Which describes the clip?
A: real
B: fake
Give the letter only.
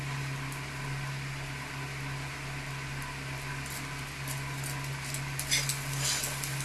A